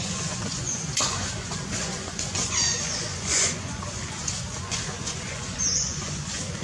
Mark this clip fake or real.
fake